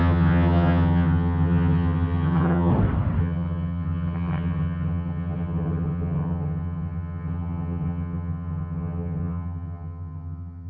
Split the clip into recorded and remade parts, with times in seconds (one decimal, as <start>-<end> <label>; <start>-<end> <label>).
0.0-2.7 remade; 2.7-3.2 recorded; 3.2-10.7 remade

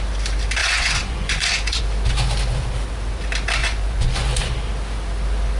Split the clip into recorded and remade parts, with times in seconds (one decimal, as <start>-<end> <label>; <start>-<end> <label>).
0.0-0.6 recorded; 0.6-1.8 remade; 1.8-3.6 recorded; 3.6-4.5 remade; 4.5-5.6 recorded

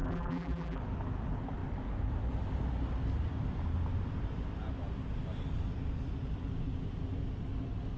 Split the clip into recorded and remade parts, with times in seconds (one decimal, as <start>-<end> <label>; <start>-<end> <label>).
0.0-0.8 remade; 0.8-8.0 recorded

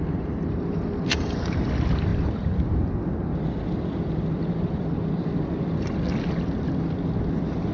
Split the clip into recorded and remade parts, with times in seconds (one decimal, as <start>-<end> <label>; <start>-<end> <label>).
0.0-7.7 recorded

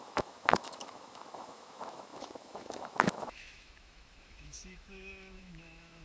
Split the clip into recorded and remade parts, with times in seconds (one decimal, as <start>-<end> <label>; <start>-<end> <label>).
0.0-6.0 remade

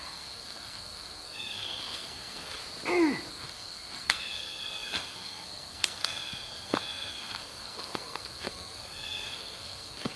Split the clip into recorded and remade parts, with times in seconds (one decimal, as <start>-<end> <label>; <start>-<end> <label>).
0.0-2.6 remade; 2.6-3.3 recorded; 3.3-10.2 remade